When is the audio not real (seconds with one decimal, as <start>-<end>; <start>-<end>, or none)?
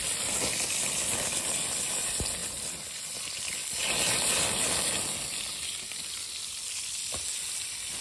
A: none